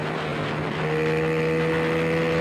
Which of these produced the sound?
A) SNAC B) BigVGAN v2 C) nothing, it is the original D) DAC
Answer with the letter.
C